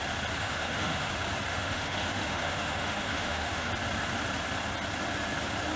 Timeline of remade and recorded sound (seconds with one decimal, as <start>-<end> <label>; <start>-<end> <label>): 0.0-0.4 recorded; 0.4-1.1 remade; 1.1-1.5 recorded; 1.5-3.7 remade; 3.7-5.8 recorded